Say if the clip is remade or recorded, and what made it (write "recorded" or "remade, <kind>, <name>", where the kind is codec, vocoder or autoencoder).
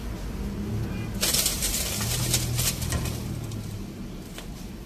recorded